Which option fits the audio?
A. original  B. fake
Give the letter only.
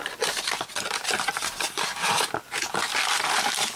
A